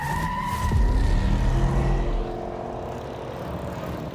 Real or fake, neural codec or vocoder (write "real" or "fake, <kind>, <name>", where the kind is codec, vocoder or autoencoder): real